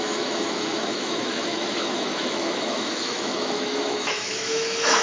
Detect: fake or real fake